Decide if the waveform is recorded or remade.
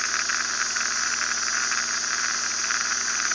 recorded